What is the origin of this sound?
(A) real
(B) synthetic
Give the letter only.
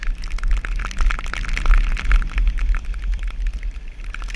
A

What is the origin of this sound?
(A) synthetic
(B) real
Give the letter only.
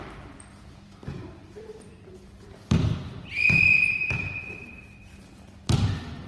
A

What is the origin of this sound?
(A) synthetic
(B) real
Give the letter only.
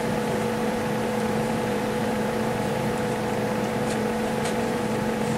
A